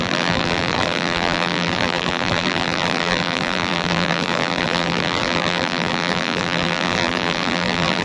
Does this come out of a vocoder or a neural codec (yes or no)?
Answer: yes